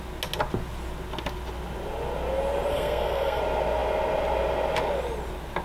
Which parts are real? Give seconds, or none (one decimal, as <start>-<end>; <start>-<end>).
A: 0.0-2.7; 3.4-5.6